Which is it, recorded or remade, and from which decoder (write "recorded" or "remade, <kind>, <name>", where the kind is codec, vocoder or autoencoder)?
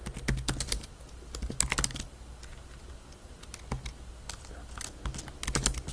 recorded